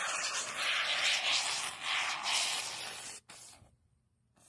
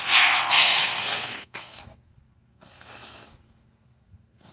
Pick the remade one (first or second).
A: second